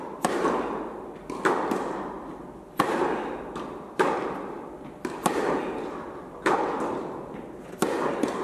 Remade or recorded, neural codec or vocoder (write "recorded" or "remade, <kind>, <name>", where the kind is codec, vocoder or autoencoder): recorded